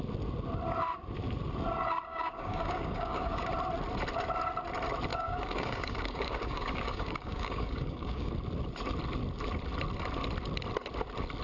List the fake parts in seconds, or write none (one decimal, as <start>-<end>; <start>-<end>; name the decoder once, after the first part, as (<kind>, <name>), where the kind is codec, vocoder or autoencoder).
2.1-3.5 (codec, DAC); 5.1-8.3